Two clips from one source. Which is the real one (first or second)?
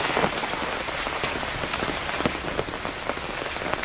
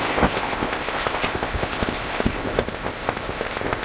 first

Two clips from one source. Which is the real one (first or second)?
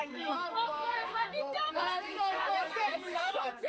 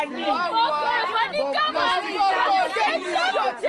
second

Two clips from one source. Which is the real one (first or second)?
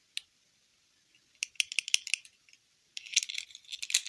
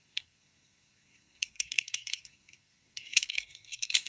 first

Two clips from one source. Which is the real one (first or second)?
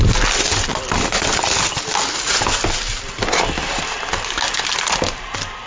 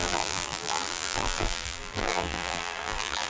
first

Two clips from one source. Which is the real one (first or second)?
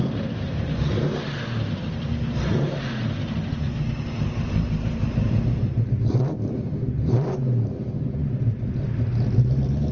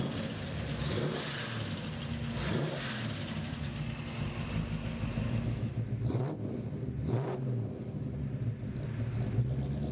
second